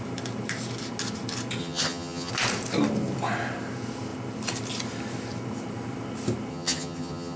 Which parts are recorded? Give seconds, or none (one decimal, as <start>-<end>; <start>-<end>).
0.0-1.6; 2.3-6.5